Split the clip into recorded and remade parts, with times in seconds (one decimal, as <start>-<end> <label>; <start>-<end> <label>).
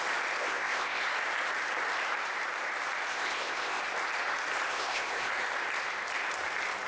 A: 0.0-0.4 recorded; 0.4-1.0 remade; 1.0-3.1 recorded; 3.1-3.8 remade; 3.8-4.7 recorded; 4.7-5.3 remade; 5.3-6.9 recorded